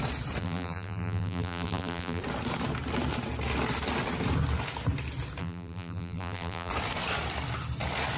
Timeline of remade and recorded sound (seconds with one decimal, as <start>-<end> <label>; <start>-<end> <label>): 0.0-0.4 recorded; 0.4-2.2 remade; 2.2-5.4 recorded; 5.4-6.7 remade; 6.7-8.2 recorded